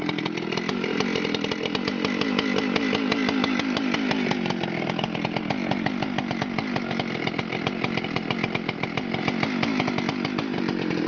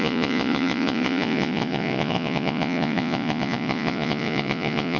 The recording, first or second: first